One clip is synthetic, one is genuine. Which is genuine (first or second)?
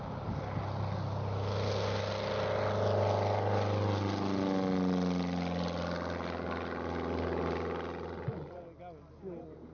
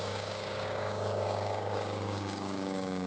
first